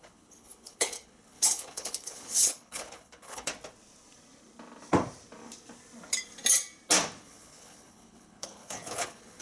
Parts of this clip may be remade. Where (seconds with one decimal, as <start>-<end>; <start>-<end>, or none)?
0.0-3.5; 7.2-9.4